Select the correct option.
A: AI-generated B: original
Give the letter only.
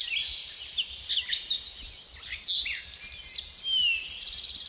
B